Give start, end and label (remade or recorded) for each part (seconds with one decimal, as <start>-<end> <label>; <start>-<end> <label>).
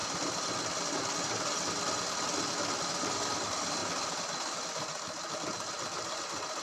0.0-6.6 recorded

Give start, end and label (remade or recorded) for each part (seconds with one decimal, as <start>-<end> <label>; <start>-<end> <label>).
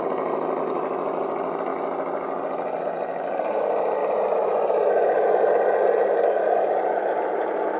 0.0-4.0 recorded; 4.0-4.9 remade; 4.9-7.8 recorded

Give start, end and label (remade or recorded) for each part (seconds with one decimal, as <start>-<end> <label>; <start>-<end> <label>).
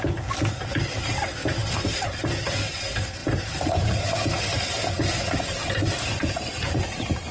0.0-3.2 recorded; 3.2-4.1 remade; 4.1-6.5 recorded; 6.5-7.3 remade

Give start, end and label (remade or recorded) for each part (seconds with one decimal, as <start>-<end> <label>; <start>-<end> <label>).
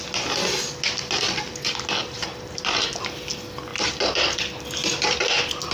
0.0-2.0 recorded; 2.0-3.0 remade; 3.0-3.7 recorded; 3.7-4.3 remade; 4.3-5.7 recorded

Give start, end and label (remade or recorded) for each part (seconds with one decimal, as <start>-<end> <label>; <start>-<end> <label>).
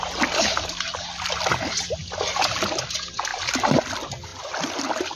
0.0-4.3 recorded; 4.3-5.2 remade